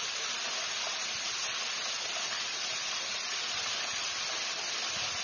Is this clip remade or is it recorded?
recorded